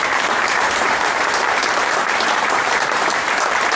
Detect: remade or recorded remade